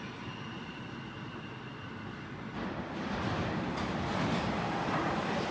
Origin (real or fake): real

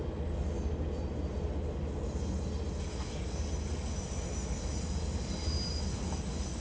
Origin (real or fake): real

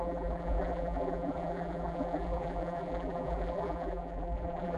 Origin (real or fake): fake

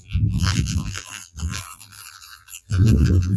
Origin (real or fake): fake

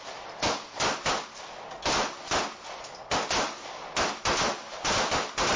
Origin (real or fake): real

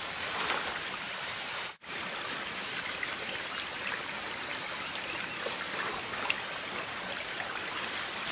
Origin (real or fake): fake